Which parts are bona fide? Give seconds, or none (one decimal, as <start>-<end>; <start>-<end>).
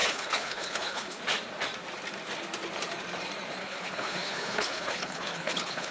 1.2-3.6